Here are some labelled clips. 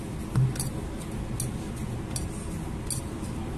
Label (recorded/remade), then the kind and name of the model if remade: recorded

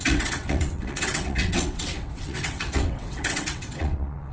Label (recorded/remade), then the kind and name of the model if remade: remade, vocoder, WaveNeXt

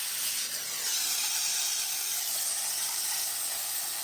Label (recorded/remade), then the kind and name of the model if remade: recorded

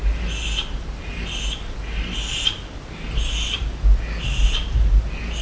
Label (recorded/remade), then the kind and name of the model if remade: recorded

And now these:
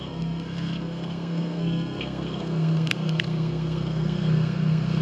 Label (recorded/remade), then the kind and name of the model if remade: remade, codec, SNAC